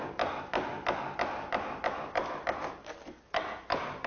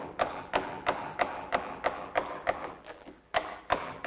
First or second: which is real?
first